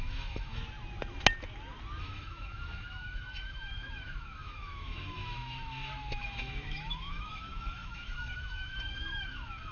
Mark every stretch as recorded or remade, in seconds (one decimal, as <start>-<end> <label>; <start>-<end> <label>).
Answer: 0.0-0.6 remade; 0.6-2.0 recorded; 2.0-9.7 remade